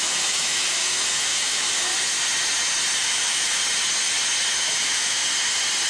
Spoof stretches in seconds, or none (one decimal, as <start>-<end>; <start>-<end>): 0.0-1.9; 3.0-3.6; 4.5-5.2